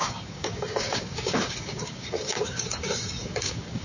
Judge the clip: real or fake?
fake